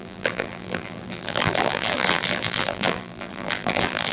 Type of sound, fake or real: fake